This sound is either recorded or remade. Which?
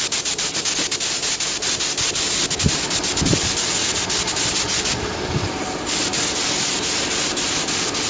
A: recorded